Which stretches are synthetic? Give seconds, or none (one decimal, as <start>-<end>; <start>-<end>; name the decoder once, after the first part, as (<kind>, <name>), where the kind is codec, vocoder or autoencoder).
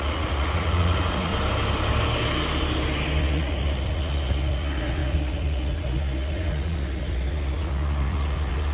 0.0-1.3 (vocoder, Vocos); 3.2-8.7